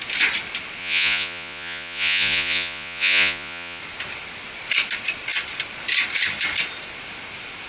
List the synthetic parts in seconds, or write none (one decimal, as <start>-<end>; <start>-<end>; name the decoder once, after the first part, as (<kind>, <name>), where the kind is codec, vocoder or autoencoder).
0.8-3.8 (vocoder, Vocos)